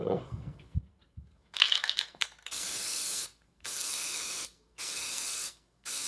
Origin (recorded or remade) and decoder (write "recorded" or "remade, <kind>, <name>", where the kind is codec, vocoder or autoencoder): remade, codec, SNAC